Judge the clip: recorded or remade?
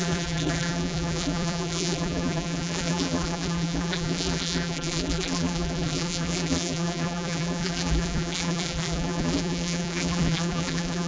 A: remade